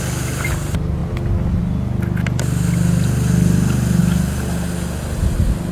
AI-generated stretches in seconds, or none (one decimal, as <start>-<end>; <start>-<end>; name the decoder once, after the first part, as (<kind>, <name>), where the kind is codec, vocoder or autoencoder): none